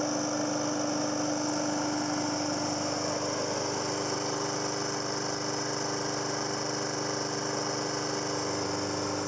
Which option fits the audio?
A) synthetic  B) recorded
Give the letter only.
B